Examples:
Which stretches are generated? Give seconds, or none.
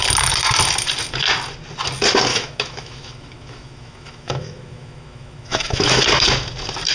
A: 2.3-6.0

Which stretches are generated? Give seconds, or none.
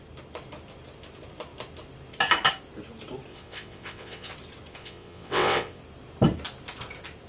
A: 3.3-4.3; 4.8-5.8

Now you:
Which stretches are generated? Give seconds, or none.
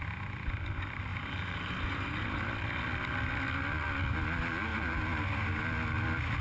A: 1.1-2.5; 4.7-5.6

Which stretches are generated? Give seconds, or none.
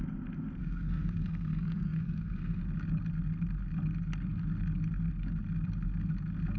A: 0.6-2.6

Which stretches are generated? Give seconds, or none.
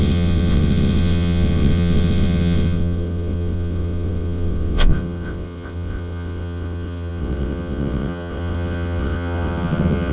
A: 0.0-10.1